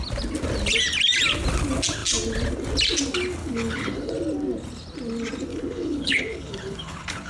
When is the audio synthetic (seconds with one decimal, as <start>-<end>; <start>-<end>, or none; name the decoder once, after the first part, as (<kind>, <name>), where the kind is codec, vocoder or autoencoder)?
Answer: 3.4-4.1 (codec, HILCodec); 5.5-7.3